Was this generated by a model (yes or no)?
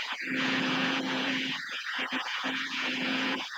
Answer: yes